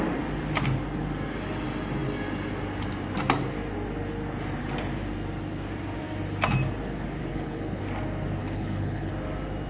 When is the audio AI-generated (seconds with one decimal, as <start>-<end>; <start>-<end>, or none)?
7.3-7.8; 8.4-9.1